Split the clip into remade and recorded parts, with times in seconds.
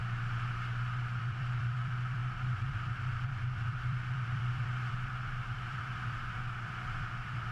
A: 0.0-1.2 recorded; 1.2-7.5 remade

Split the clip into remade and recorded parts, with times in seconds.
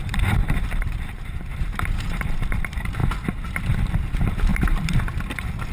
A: 0.0-3.0 remade; 3.0-3.7 recorded; 3.7-5.7 remade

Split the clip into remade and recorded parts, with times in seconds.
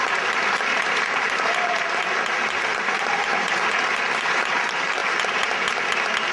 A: 0.0-5.0 remade; 5.0-6.3 recorded